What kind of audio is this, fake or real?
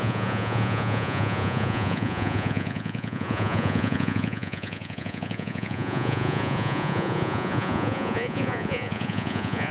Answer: fake